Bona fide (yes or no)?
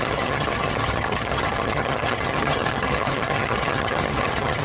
no